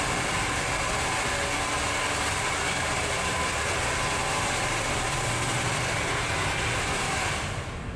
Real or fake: real